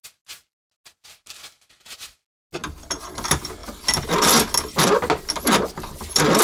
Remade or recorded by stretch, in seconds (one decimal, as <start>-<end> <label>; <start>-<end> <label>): 0.0-6.4 recorded

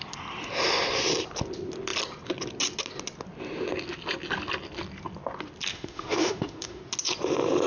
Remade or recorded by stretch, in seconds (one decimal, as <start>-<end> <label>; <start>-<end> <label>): 0.0-5.7 recorded; 5.7-6.8 remade; 6.8-7.7 recorded

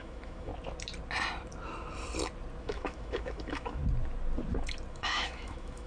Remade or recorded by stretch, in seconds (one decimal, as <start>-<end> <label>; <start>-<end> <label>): 0.0-0.5 remade; 0.5-2.6 recorded; 2.6-3.8 remade; 3.8-4.9 recorded; 4.9-5.9 remade

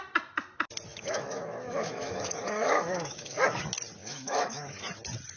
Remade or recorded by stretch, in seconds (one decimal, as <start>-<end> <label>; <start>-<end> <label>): 0.0-0.9 recorded; 0.9-3.6 remade; 3.6-4.0 recorded; 4.0-4.8 remade; 4.8-5.4 recorded

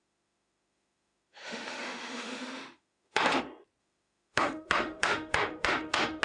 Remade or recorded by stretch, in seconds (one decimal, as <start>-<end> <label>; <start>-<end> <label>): 0.0-3.4 remade; 3.4-3.8 recorded; 3.8-6.2 remade

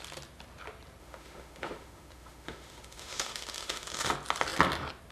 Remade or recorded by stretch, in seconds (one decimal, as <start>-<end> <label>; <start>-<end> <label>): 0.0-1.0 recorded; 1.0-4.1 remade; 4.1-5.1 recorded

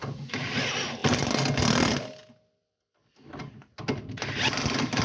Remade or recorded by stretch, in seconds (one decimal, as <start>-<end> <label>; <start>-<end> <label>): 0.0-5.0 recorded

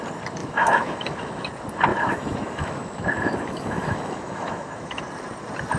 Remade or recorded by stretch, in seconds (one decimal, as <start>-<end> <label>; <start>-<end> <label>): 0.0-0.4 recorded; 0.4-1.5 remade; 1.5-1.9 recorded; 1.9-5.0 remade; 5.0-5.8 recorded